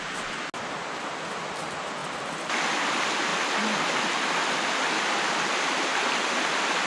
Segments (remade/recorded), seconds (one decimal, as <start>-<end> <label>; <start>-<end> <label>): 0.0-2.0 recorded; 2.0-2.8 remade; 2.8-6.9 recorded